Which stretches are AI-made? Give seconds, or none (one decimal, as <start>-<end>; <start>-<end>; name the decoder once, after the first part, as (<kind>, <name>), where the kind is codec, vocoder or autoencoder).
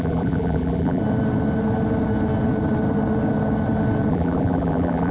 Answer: 0.0-1.0 (vocoder, BigVGAN v2); 4.1-5.1